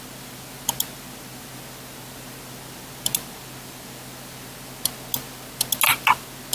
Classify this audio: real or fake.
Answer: real